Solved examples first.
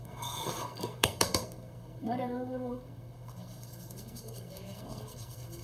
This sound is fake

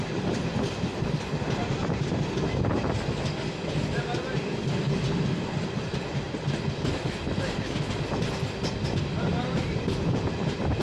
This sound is real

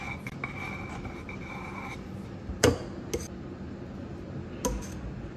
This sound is real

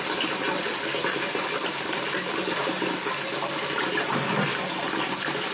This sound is real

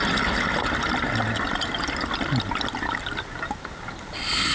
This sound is real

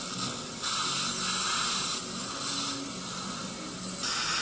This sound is real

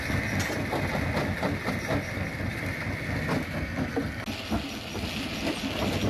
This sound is real